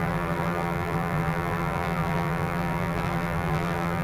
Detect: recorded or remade remade